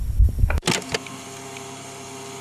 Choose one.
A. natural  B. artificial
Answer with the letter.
A